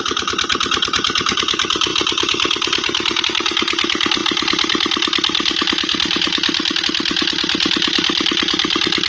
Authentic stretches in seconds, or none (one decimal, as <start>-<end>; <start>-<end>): 0.0-9.1